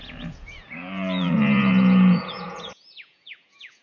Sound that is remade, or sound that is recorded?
remade